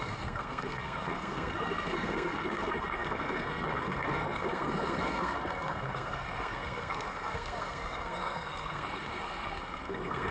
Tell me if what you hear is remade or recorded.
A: remade